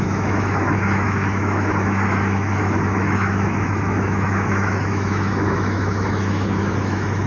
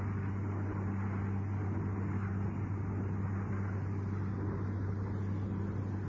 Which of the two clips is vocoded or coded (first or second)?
first